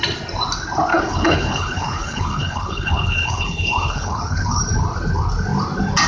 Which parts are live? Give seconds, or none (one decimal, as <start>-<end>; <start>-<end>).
0.0-0.9; 4.6-6.1